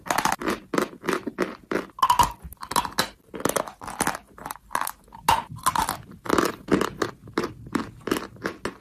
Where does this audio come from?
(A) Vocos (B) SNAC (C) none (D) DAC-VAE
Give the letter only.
C